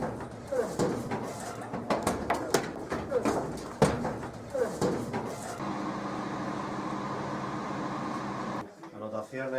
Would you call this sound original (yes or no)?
yes